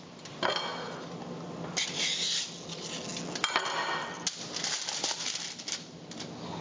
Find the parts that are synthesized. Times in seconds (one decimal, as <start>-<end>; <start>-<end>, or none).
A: 0.0-0.7; 4.7-6.6